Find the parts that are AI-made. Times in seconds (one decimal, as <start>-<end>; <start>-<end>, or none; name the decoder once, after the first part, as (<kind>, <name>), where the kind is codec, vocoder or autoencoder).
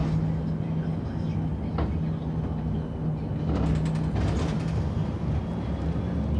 none